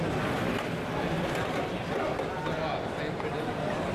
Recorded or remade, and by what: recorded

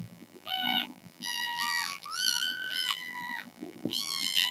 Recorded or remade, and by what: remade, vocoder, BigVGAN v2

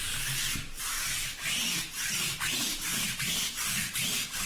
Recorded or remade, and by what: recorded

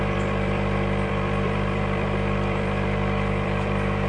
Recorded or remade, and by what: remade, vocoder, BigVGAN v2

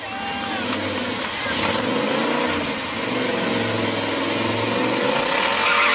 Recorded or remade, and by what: recorded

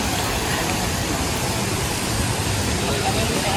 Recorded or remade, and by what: remade, vocoder, BigVGAN v2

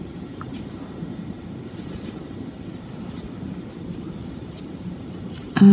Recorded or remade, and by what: remade, vocoder, BigVGAN v2